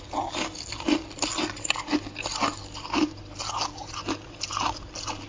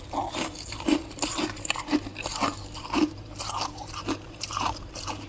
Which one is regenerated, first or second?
second